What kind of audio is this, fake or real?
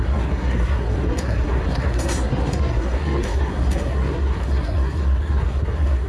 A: fake